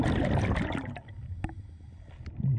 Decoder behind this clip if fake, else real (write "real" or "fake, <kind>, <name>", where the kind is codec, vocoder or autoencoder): real